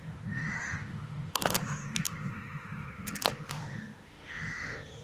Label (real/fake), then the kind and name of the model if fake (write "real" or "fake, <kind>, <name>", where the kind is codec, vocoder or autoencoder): fake, autoencoder, DAC-VAE